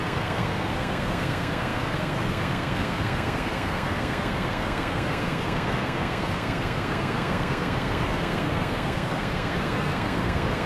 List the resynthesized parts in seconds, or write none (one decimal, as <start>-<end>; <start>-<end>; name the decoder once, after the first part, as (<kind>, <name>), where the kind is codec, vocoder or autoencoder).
0.0-10.7 (codec, SNAC)